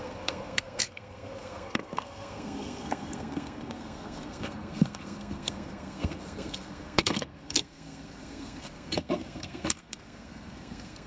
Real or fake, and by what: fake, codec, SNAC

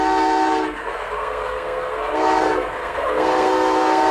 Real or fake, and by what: fake, codec, SNAC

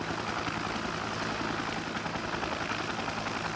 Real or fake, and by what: real